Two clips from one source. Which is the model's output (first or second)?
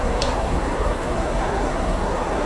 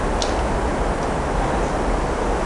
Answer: first